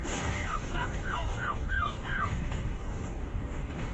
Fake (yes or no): yes